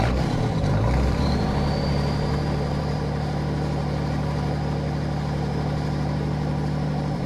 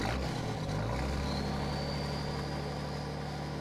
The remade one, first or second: first